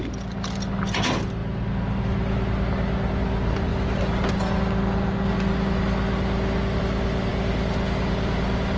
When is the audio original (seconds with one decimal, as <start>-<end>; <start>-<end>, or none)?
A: 0.0-8.8